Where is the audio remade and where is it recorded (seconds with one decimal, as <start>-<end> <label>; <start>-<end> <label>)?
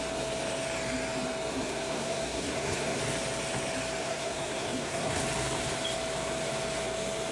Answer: 0.0-1.5 recorded; 1.5-3.0 remade; 3.0-4.0 recorded; 4.0-5.2 remade; 5.2-7.3 recorded